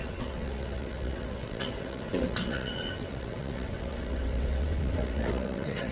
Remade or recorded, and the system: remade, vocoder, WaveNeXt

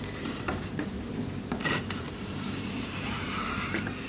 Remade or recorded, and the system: remade, vocoder, BigVGAN v2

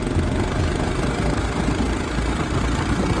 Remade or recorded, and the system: recorded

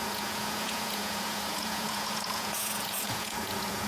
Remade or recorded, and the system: remade, vocoder, Vocos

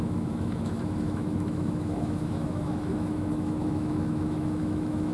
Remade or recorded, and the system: remade, autoencoder, DAC-VAE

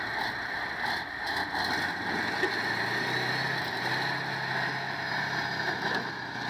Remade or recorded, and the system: recorded